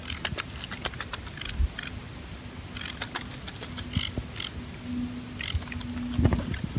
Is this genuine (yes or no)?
yes